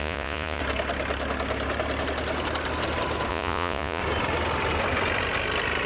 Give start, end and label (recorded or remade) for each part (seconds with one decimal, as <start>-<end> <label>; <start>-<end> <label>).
0.0-0.6 remade; 0.6-3.3 recorded; 3.3-4.0 remade; 4.0-5.9 recorded

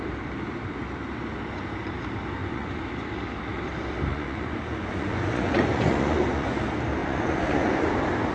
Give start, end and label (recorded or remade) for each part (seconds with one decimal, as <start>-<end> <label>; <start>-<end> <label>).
0.0-2.4 recorded; 2.4-2.9 remade; 2.9-4.1 recorded; 4.1-6.6 remade; 6.6-7.0 recorded; 7.0-7.9 remade; 7.9-8.3 recorded

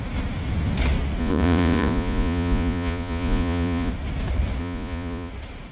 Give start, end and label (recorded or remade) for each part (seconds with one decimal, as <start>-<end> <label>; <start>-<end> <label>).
0.0-1.2 recorded; 1.2-3.9 remade; 3.9-4.6 recorded; 4.6-5.3 remade; 5.3-5.7 recorded